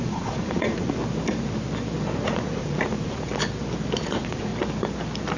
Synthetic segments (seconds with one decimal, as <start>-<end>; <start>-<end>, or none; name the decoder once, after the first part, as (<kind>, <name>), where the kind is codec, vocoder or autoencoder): 0.0-1.0 (vocoder, Vocos); 2.2-3.3; 4.0-4.5